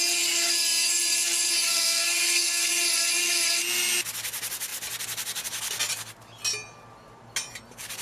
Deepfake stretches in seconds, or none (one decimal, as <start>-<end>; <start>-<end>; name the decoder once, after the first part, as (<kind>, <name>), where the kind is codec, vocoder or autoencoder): 1.7-2.7 (codec, SNAC)